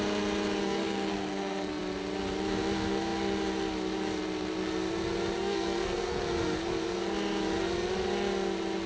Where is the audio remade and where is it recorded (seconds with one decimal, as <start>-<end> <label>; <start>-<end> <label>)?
0.0-0.6 recorded; 0.6-1.8 remade; 1.8-5.4 recorded; 5.4-6.2 remade; 6.2-8.9 recorded